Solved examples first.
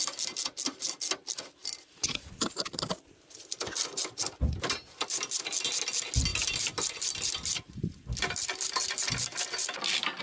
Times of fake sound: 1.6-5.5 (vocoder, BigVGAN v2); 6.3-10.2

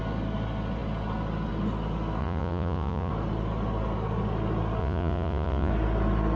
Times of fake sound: 2.2-3.1 (vocoder, Vocos); 4.8-5.7

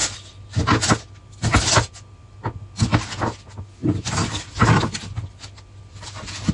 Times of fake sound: none

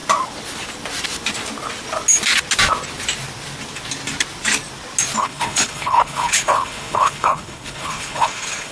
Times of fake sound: 5.2-8.7 (codec, HILCodec)

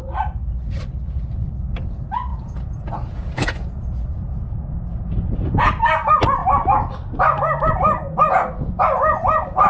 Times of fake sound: 2.3-5.7 (vocoder, Vocos)

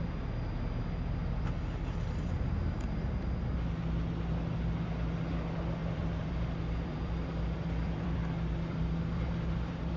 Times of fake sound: 5.8-10.0 (vocoder, BigVGAN v2)

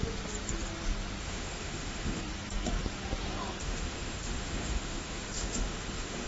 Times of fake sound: 1.2-2.2 (autoencoder, DAC-VAE); 3.6-6.3